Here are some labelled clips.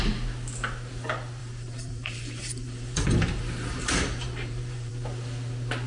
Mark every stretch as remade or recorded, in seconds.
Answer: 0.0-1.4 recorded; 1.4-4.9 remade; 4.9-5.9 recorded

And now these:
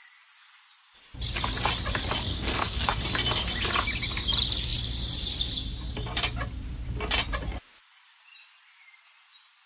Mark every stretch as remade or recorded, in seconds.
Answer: 0.0-2.3 recorded; 2.3-3.0 remade; 3.0-9.7 recorded